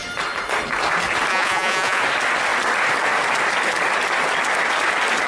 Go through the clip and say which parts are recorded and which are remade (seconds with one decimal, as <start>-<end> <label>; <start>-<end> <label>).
0.0-1.3 recorded; 1.3-2.0 remade; 2.0-5.3 recorded